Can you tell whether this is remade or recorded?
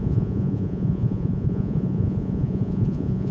remade